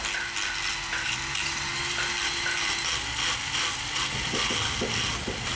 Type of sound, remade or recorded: recorded